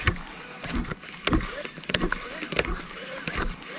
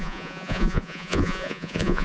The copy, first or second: second